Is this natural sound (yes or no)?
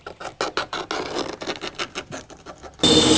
yes